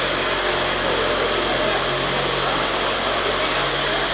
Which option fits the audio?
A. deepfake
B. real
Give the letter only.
B